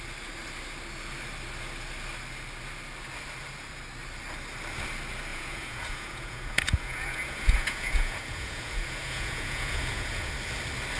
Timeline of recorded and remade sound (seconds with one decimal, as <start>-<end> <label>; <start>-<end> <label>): 0.0-5.3 recorded; 5.3-10.3 remade; 10.3-11.0 recorded